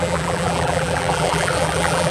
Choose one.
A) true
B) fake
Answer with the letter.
B